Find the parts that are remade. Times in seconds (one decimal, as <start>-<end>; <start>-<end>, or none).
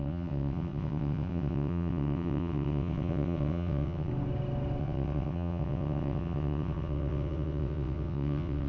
0.0-4.1; 4.8-8.7